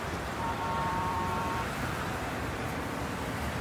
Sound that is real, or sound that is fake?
fake